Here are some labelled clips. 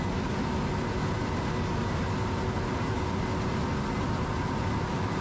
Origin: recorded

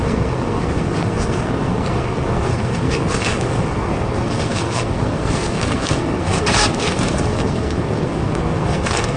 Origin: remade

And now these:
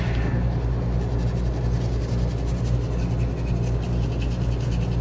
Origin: recorded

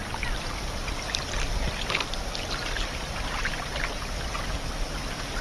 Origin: recorded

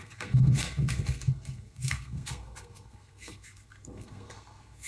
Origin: remade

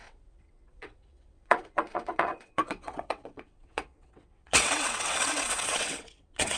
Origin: remade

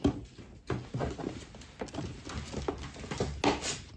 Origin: recorded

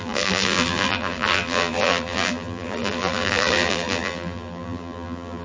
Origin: remade